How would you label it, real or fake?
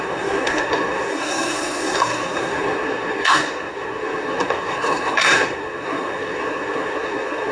fake